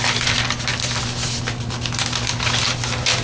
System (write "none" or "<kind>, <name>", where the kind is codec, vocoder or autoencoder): none